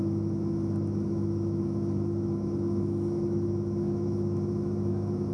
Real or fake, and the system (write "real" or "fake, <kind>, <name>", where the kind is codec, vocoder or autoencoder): fake, autoencoder, DAC-VAE